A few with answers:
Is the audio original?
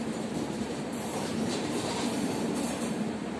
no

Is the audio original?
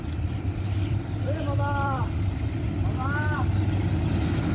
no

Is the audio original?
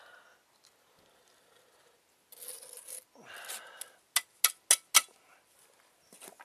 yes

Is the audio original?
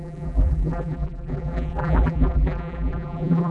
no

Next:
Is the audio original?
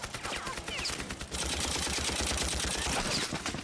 no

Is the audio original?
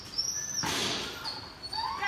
yes